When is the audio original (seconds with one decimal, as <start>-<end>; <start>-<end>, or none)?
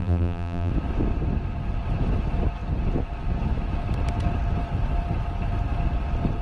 0.7-6.4